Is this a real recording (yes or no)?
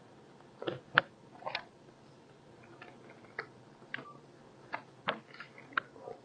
yes